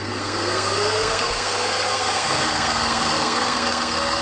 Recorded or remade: remade